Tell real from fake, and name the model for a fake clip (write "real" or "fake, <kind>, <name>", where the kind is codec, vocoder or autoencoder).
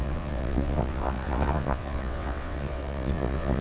fake, vocoder, WaveNeXt